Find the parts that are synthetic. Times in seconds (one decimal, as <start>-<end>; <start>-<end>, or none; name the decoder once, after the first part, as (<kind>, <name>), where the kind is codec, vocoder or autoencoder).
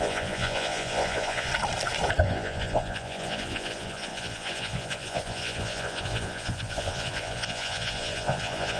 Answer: 0.0-1.5 (vocoder, Vocos); 2.2-8.8